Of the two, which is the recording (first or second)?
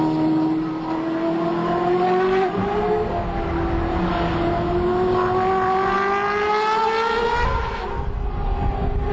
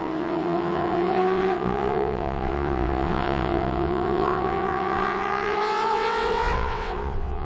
first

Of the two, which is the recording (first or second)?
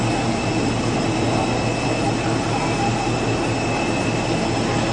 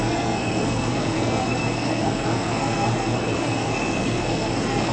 first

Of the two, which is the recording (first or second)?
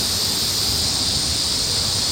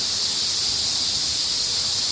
first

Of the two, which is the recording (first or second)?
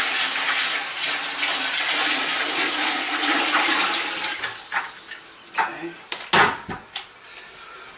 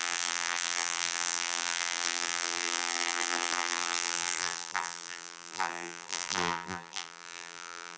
first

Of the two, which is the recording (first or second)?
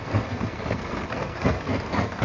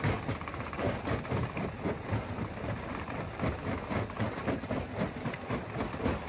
second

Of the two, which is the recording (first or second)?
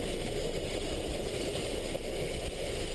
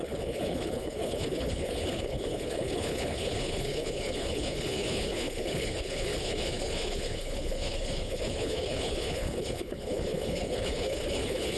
first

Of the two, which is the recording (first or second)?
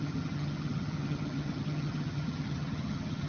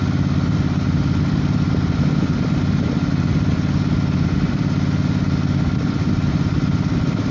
second